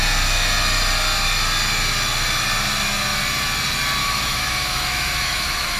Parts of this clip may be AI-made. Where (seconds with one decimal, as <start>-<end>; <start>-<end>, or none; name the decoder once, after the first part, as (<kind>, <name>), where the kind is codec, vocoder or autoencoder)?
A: 4.0-5.8 (autoencoder, DAC-VAE)